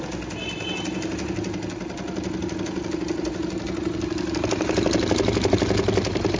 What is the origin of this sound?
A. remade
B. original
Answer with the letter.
B